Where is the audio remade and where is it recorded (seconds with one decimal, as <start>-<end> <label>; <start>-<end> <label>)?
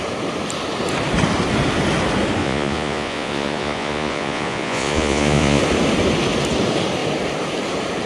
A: 0.0-2.4 recorded; 2.4-5.6 remade; 5.6-8.1 recorded